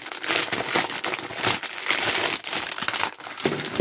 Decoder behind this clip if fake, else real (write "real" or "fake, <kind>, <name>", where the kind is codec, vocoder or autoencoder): real